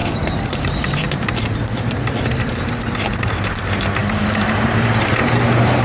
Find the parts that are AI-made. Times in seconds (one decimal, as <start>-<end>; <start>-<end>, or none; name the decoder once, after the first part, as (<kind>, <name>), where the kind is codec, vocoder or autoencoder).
0.0-5.8 (vocoder, BigVGAN v2)